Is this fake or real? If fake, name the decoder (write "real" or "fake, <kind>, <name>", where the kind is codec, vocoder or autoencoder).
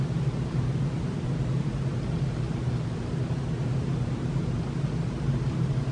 real